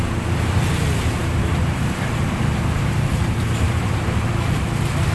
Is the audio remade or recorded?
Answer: remade